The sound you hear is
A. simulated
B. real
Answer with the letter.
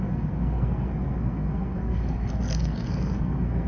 A